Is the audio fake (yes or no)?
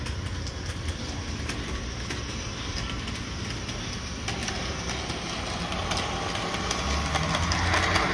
no